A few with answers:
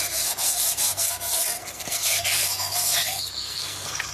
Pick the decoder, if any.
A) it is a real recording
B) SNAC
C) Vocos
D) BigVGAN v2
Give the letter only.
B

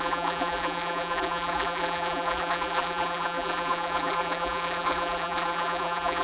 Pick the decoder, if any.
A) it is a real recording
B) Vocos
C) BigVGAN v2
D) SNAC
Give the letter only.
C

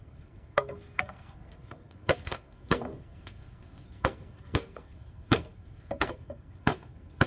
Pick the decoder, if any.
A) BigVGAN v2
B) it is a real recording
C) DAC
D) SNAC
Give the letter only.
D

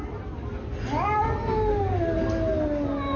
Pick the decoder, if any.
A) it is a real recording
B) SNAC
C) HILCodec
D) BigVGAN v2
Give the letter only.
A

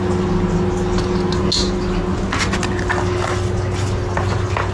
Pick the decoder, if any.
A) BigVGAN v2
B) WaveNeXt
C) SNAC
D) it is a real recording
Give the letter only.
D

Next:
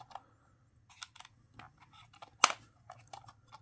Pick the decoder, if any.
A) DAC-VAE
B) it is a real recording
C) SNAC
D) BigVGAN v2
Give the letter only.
B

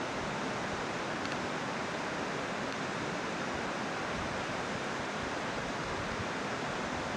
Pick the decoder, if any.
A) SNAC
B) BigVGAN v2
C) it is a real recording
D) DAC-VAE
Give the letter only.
C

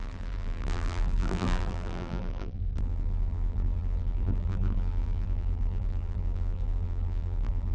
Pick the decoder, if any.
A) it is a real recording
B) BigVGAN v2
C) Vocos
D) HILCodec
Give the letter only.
B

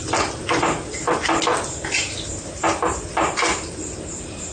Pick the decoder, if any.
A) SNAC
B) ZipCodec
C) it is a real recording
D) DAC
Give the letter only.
C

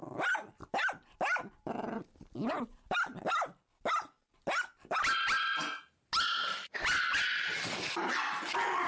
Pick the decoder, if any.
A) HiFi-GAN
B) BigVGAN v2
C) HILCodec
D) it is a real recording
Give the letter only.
D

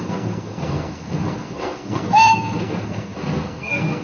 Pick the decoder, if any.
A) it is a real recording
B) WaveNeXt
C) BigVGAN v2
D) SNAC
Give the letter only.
D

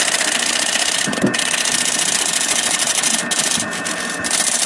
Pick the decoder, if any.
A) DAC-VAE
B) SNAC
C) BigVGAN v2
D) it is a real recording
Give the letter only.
D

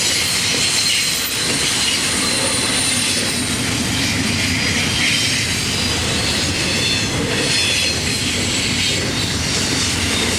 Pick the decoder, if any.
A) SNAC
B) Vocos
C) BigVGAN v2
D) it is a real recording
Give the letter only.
D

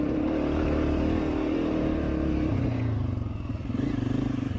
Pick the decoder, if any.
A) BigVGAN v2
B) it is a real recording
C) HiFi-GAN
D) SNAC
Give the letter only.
B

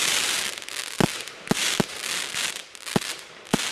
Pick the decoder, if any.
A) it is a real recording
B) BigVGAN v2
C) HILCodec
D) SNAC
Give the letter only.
A